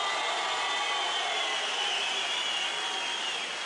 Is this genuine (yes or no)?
yes